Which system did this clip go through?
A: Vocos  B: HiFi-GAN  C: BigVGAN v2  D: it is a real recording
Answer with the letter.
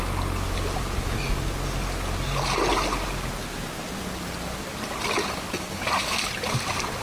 D